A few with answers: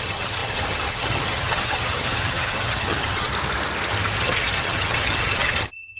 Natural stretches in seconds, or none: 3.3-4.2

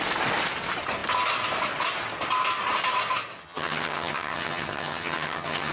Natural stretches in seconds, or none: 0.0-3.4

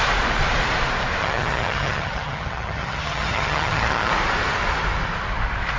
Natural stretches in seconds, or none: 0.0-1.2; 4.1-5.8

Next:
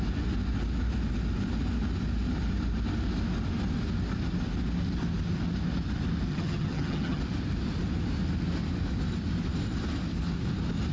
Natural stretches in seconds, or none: 0.0-6.3; 7.2-10.9

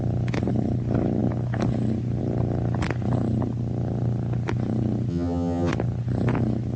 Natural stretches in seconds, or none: 0.0-5.1; 5.7-6.8

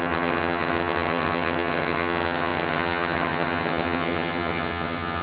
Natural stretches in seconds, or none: none

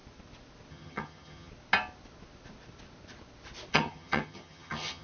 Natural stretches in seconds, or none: 0.0-0.7; 1.5-3.7